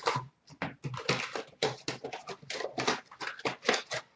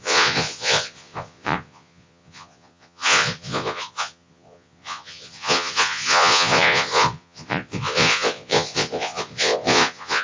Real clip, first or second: first